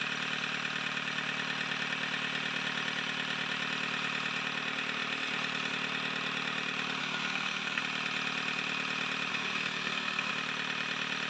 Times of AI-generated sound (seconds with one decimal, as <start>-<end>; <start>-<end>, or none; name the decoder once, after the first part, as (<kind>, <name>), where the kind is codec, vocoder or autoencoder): 7.0-7.8 (codec, SNAC); 9.3-10.3